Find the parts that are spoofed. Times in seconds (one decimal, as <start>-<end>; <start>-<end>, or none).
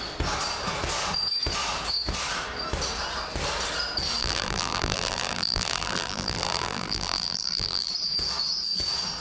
4.2-7.9